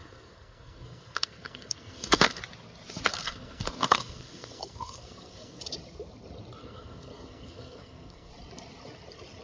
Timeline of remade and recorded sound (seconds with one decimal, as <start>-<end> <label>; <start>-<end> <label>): 0.0-2.4 remade; 2.4-3.1 recorded; 3.1-5.6 remade; 5.6-6.6 recorded; 6.6-8.3 remade; 8.3-9.4 recorded